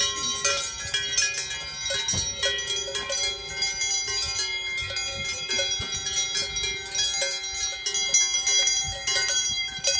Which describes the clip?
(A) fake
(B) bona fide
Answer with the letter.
B